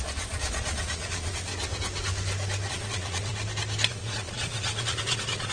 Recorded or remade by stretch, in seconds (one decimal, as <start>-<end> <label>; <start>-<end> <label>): 0.0-1.5 remade; 1.5-2.7 recorded; 2.7-3.3 remade; 3.3-3.9 recorded; 3.9-5.5 remade